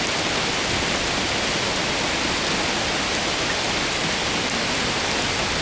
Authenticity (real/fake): real